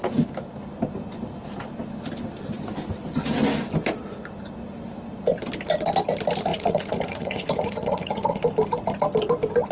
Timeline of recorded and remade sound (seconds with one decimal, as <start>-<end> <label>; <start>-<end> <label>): 0.0-6.5 recorded; 6.5-8.4 remade; 8.4-9.7 recorded

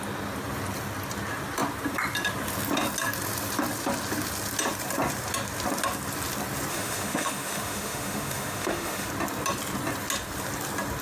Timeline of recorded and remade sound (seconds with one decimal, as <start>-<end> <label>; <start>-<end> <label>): 0.0-6.7 recorded; 6.7-9.1 remade; 9.1-11.0 recorded

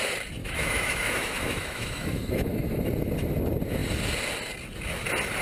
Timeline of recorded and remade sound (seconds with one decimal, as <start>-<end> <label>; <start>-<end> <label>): 0.0-0.4 recorded; 0.4-2.8 remade; 2.8-5.4 recorded

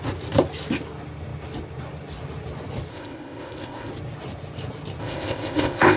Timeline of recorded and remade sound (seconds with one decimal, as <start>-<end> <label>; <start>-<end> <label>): 0.0-2.9 recorded; 2.9-3.9 remade; 3.9-5.0 recorded; 5.0-6.0 remade

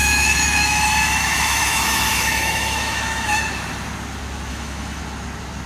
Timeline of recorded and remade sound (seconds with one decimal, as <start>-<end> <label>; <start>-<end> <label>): 0.0-3.4 remade; 3.4-4.5 recorded; 4.5-5.0 remade; 5.0-5.7 recorded

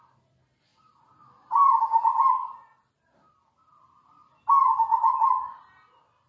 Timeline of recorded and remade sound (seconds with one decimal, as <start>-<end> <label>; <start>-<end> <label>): 0.0-6.3 recorded

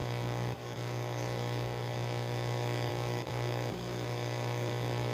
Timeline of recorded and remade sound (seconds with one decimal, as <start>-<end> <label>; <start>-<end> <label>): 0.0-5.1 remade